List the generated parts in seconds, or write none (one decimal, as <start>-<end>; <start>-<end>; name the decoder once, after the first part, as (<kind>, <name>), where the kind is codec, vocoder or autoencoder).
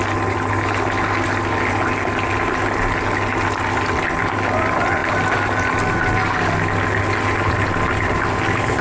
none